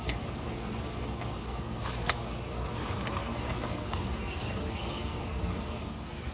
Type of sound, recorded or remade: remade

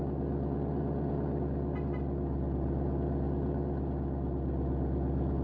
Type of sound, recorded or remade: recorded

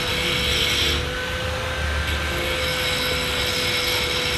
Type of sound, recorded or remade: recorded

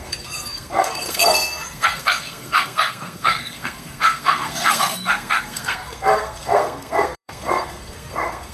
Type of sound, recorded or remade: remade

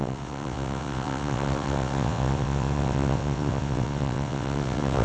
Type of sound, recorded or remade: remade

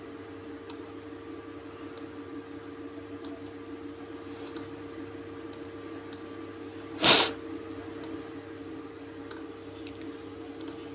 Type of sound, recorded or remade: recorded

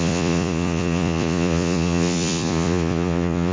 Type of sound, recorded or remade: remade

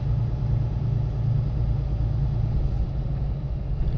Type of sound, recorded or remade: recorded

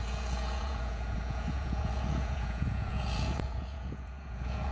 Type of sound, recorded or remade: remade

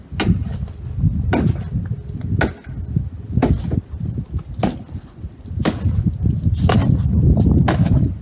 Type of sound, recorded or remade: recorded